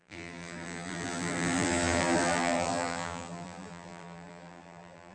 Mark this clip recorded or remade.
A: remade